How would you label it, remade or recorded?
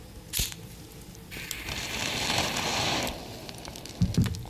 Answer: recorded